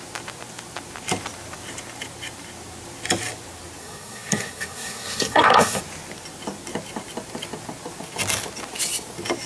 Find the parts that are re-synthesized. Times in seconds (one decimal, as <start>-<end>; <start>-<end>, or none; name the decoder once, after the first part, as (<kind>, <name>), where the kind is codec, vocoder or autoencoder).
3.8-5.8 (codec, SNAC)

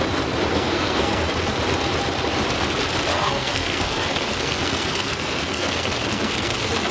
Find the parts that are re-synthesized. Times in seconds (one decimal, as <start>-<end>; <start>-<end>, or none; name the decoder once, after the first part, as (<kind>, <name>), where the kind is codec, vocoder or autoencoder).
0.5-1.3 (codec, SNAC); 3.1-6.9

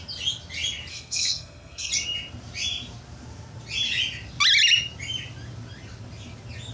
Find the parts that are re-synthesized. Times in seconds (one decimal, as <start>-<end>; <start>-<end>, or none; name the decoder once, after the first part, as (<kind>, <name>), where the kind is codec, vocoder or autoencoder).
0.9-1.9 (codec, SNAC)